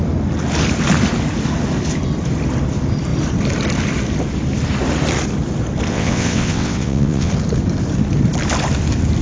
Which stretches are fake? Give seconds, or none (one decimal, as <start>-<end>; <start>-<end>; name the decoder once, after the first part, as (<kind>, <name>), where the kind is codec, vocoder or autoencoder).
5.9-7.3 (vocoder, WaveNeXt)